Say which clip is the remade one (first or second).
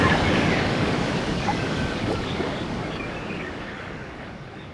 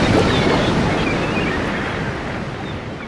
first